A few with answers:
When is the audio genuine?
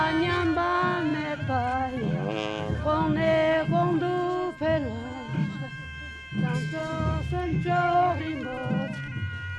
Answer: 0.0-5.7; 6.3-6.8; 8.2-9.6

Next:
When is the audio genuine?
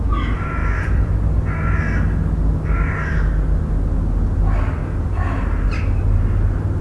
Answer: 0.0-0.6; 1.2-6.8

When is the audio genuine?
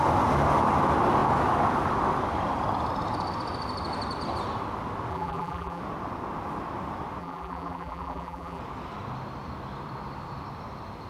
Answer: 0.0-5.1; 5.8-7.2; 8.6-11.1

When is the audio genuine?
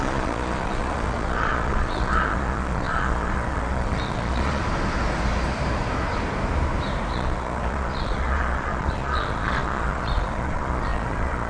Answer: 4.6-7.1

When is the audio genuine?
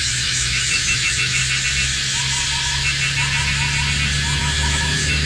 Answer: 1.4-4.4